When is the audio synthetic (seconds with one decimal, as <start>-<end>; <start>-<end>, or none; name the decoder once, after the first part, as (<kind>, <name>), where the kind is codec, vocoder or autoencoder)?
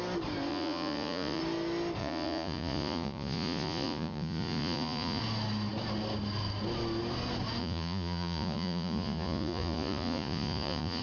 0.5-1.4 (vocoder, Vocos); 2.0-5.2; 7.6-11.0